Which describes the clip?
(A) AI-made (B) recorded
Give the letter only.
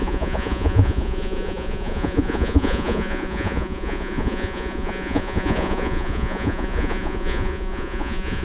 A